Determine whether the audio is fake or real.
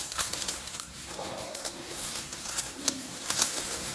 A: fake